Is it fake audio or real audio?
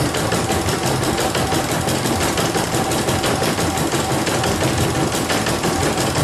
fake